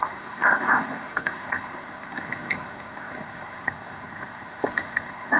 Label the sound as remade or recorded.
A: remade